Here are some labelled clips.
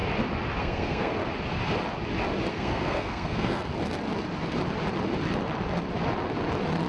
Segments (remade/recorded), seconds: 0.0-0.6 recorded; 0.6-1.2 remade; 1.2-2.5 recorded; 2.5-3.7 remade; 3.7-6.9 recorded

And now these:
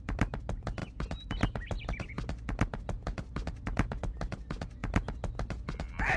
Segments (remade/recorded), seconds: 0.0-6.2 recorded

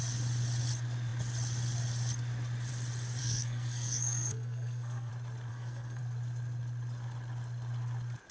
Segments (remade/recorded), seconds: 0.0-3.2 recorded; 3.2-5.1 remade; 5.1-5.5 recorded; 5.5-6.0 remade; 6.0-8.3 recorded

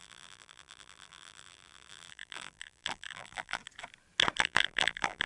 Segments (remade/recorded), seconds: 0.0-3.6 remade; 3.6-4.4 recorded; 4.4-5.3 remade

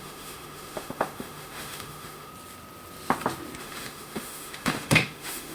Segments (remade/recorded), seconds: 0.0-2.3 remade; 2.3-3.6 recorded; 3.6-5.5 remade

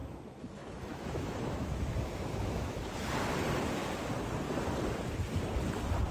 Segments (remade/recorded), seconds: 0.0-2.9 remade; 2.9-6.1 recorded

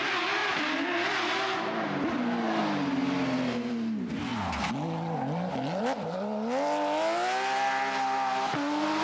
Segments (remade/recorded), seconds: 0.0-9.0 recorded